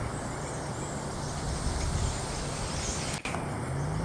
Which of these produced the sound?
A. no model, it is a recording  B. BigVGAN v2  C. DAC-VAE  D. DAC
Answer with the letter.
A